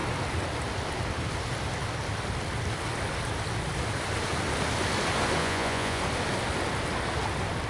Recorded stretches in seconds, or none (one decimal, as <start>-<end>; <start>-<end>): 0.0-5.4; 6.0-7.7